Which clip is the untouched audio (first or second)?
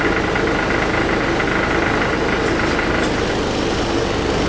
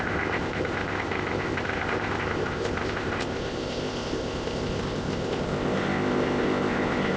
first